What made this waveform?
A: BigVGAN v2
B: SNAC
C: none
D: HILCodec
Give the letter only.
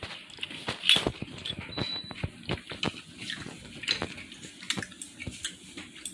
C